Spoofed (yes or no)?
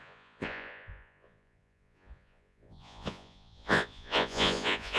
yes